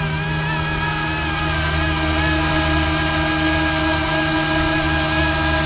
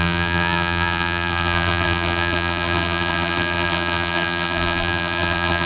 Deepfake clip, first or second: second